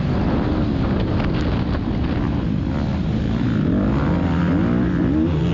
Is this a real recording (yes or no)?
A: yes